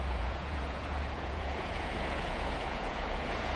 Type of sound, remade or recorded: remade